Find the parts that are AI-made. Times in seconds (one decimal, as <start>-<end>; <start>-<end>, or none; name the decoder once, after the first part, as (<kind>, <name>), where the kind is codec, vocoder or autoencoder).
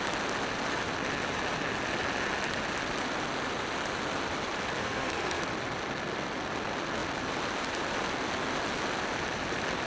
4.8-5.4 (codec, SNAC)